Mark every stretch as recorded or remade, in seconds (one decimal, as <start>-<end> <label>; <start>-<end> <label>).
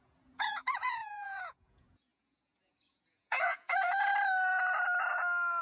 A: 0.0-4.1 remade; 4.1-5.6 recorded